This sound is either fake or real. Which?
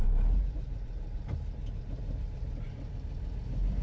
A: fake